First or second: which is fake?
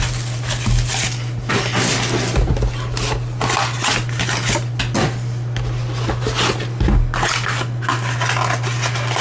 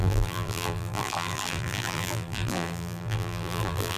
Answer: second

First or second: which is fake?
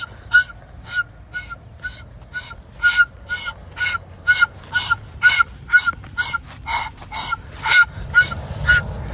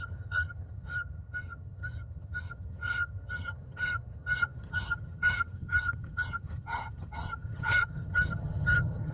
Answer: second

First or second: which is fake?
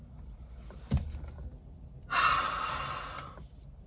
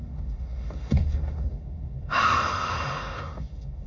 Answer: second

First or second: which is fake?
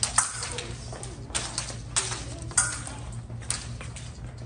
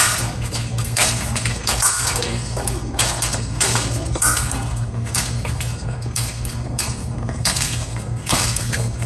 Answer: second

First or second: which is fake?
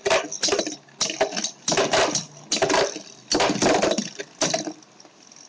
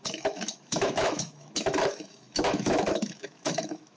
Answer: second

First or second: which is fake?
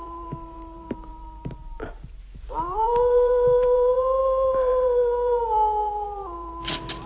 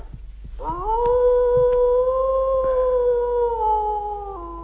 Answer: first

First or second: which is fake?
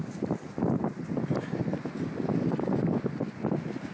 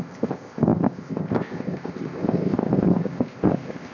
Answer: second